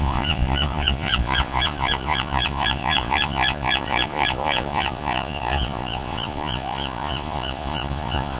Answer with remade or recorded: remade